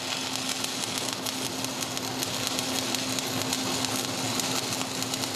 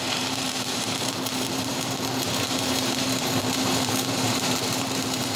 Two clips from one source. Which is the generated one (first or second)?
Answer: second